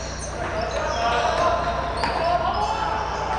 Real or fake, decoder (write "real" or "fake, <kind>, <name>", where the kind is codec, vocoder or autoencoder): real